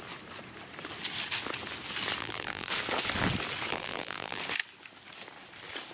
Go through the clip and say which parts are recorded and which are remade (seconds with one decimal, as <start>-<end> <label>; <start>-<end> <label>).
0.0-2.2 recorded; 2.2-2.7 remade; 2.7-3.7 recorded; 3.7-4.4 remade; 4.4-5.9 recorded